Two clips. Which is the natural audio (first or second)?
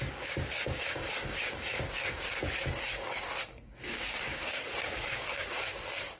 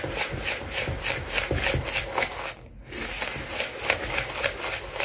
second